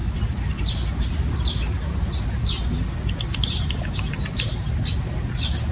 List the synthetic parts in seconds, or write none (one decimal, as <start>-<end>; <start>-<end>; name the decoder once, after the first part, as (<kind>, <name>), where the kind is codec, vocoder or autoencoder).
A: none